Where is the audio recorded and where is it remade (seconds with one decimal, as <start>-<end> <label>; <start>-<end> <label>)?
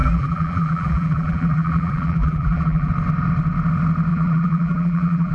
0.0-2.9 remade; 2.9-4.1 recorded; 4.1-5.3 remade